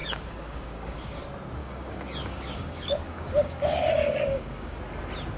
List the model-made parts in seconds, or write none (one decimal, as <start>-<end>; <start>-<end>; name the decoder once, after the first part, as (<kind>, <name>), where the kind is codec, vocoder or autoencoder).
0.0-1.2 (codec, DAC); 1.6-4.8